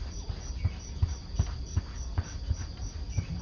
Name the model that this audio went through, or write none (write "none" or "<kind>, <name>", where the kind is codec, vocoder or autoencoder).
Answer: none